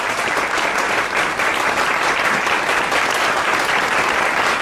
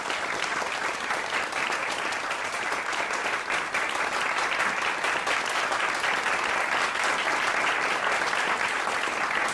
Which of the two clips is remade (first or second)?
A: first